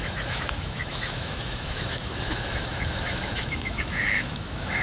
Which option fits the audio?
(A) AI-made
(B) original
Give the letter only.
A